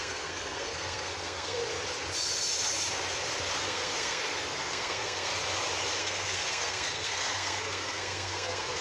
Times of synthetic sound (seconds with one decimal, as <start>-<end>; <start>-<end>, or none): 0.0-1.6; 3.6-5.3; 6.0-8.8